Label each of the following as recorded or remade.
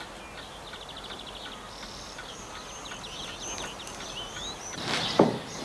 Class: recorded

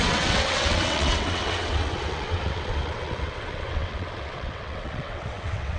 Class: remade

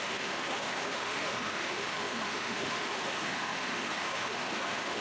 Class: remade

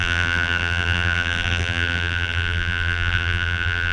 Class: remade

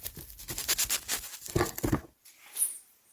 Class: recorded